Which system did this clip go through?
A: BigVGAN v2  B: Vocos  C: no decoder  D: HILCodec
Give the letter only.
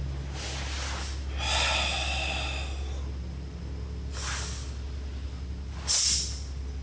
C